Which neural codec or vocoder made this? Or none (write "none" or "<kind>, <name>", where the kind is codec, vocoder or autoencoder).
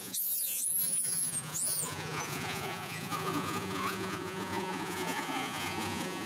vocoder, Vocos